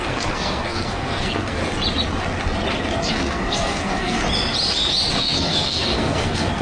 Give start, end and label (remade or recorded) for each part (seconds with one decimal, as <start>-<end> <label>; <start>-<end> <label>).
0.0-1.6 remade; 1.6-3.1 recorded; 3.1-4.2 remade; 4.2-5.1 recorded; 5.1-6.6 remade